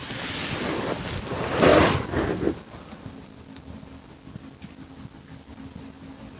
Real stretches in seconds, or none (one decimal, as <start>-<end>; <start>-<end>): 0.0-6.4